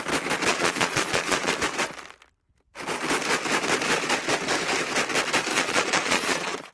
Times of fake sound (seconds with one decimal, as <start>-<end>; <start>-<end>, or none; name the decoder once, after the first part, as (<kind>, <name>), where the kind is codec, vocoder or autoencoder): 0.5-1.5 (vocoder, Vocos); 5.5-6.7